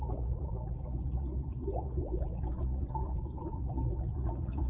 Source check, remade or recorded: remade